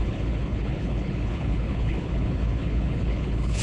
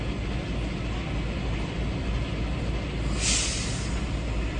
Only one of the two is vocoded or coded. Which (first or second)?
first